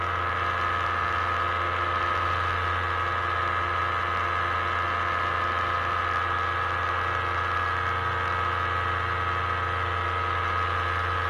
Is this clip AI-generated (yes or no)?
no